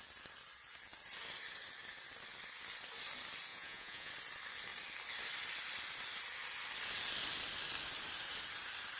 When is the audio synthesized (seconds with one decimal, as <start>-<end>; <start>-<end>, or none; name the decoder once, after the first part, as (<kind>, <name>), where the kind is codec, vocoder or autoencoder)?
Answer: 3.5-4.1 (vocoder, Vocos)